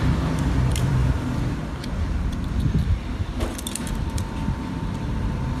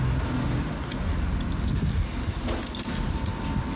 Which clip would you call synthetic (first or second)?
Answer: first